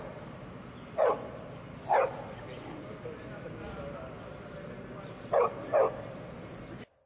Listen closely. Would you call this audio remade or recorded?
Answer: recorded